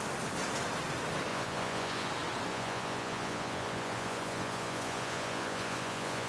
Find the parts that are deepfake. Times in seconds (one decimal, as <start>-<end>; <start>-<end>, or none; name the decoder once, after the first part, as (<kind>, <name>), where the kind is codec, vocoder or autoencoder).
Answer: 1.3-2.1 (vocoder, Vocos); 2.5-6.3